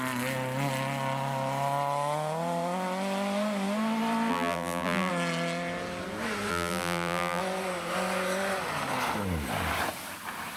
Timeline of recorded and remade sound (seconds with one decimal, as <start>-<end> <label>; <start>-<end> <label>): 0.0-4.3 recorded; 4.3-5.1 remade; 5.1-6.5 recorded; 6.5-7.4 remade; 7.4-10.6 recorded